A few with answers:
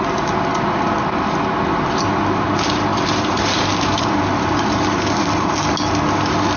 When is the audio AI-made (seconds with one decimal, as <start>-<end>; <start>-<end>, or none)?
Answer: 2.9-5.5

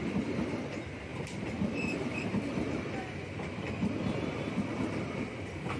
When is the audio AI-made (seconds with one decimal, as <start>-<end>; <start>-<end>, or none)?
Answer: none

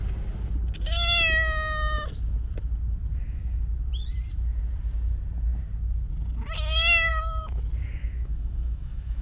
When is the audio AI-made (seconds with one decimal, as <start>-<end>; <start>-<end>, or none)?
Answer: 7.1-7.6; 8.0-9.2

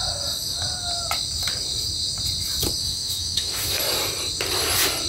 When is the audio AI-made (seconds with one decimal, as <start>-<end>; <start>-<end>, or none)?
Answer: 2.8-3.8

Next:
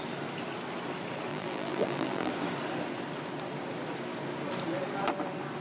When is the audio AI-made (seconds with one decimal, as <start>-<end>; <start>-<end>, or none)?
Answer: 1.3-2.3

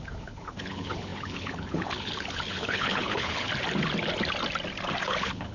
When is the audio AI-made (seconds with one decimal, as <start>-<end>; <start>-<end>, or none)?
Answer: 0.0-3.5; 5.0-5.5